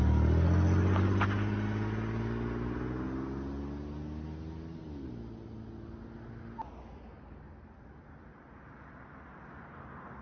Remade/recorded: recorded